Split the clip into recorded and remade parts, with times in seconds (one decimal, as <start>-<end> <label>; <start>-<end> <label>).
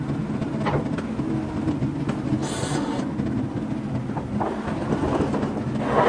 0.0-6.1 recorded